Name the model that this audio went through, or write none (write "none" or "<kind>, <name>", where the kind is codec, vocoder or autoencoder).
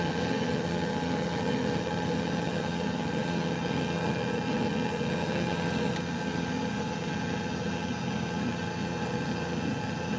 vocoder, HiFi-GAN